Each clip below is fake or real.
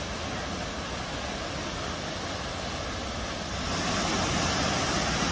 real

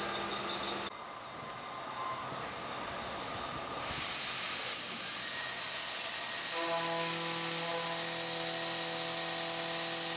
real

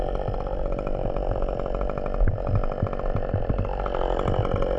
real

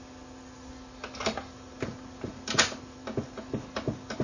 real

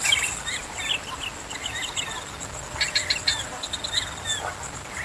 real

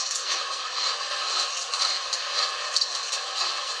fake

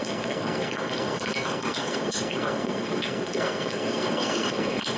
fake